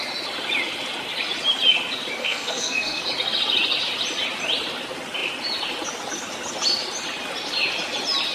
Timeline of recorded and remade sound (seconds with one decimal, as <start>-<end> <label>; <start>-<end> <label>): 0.0-2.2 recorded; 2.2-3.0 remade; 3.0-8.3 recorded